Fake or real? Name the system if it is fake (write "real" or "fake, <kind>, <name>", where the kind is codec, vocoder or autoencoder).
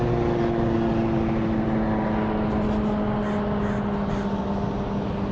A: real